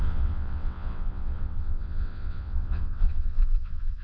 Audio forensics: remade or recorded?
remade